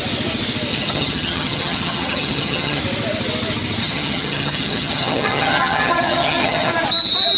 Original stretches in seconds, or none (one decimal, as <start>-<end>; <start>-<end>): 0.0-0.7; 2.8-3.8; 6.7-7.4